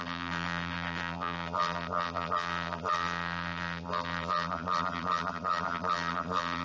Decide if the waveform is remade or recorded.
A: remade